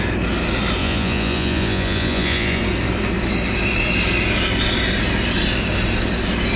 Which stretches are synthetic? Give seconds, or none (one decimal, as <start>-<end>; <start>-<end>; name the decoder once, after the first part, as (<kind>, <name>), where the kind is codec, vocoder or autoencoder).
0.8-2.6 (vocoder, Vocos)